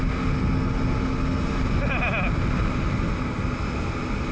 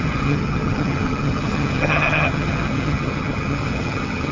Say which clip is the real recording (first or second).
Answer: first